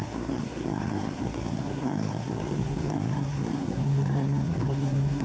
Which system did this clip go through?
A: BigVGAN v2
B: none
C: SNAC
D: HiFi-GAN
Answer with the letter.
C